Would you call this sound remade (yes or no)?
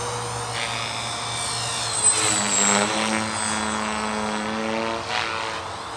no